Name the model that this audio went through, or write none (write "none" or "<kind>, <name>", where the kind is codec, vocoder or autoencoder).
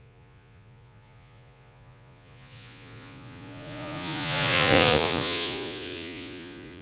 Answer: vocoder, Vocos